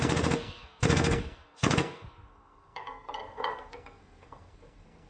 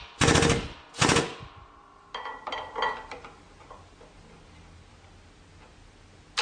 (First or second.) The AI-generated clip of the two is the first